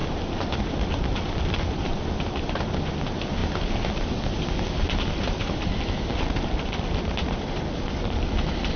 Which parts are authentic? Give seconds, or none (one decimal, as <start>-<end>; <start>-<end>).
0.0-8.8